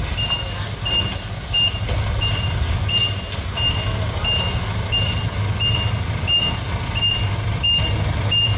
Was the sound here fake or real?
real